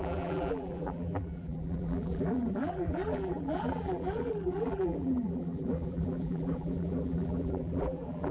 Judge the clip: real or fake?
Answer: fake